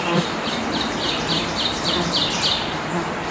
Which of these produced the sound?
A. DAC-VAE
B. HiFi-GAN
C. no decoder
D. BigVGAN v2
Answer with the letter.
D